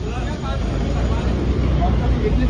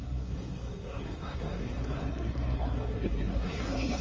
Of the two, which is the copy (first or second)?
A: second